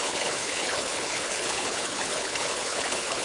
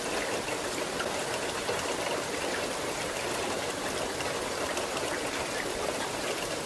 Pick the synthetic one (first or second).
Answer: first